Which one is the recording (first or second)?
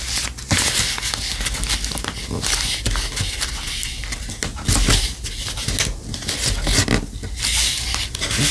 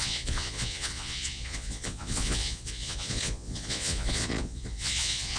first